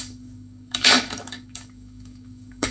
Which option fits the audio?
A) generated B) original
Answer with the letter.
A